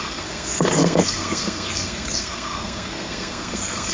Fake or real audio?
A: fake